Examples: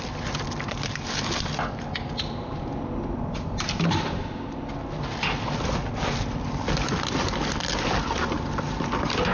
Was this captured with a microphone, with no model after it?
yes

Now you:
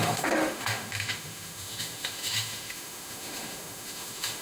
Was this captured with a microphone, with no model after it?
no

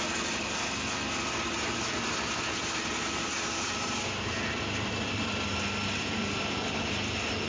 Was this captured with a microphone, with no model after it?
yes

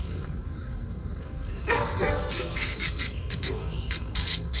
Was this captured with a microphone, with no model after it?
no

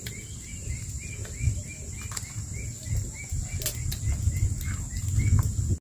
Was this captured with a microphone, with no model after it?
yes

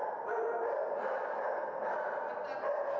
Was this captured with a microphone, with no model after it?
yes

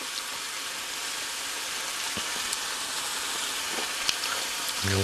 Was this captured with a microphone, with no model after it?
yes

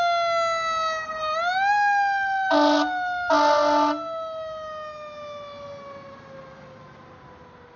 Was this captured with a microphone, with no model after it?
yes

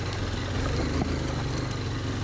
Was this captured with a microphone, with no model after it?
yes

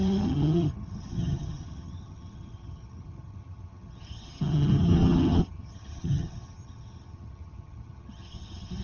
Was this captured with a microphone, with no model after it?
no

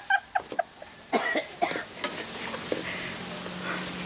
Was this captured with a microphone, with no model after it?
yes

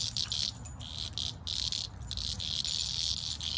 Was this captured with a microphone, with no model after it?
yes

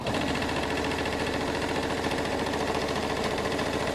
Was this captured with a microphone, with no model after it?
no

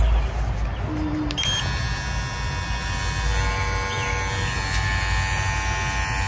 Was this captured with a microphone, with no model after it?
yes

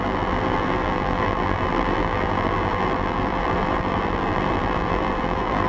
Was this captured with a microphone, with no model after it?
no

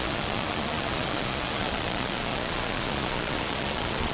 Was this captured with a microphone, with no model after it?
no